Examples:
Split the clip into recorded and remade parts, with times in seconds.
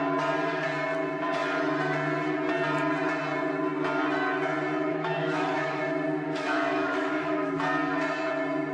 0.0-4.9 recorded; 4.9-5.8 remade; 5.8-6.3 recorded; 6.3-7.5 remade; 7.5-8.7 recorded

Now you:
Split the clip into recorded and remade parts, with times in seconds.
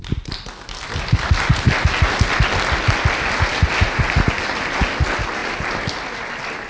0.0-6.7 recorded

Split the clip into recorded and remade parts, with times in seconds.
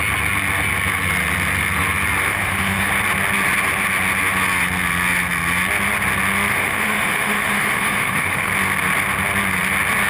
0.0-2.3 recorded; 2.3-2.9 remade; 2.9-6.5 recorded; 6.5-8.5 remade; 8.5-10.1 recorded